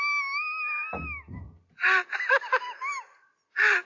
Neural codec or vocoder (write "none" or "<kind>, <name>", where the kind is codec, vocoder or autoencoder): none